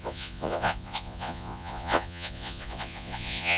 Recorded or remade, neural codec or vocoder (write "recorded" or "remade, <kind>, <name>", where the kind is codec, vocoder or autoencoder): remade, vocoder, Vocos